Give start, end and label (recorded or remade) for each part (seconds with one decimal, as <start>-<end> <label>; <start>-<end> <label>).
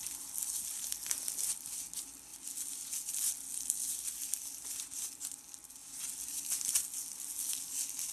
0.0-8.1 recorded